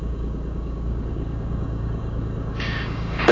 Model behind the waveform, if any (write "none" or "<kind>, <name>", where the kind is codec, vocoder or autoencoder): codec, DAC